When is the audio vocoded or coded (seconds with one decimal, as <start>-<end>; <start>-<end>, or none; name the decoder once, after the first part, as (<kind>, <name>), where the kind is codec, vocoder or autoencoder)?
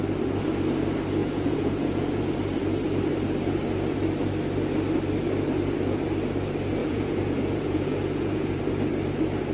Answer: 1.2-2.2 (vocoder, Vocos); 6.8-8.6